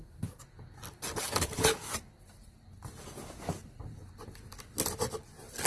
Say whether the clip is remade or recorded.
recorded